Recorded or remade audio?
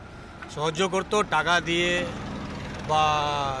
recorded